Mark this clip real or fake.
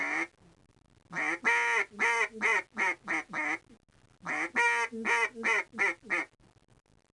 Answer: real